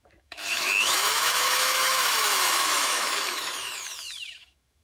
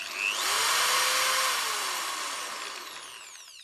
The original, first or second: second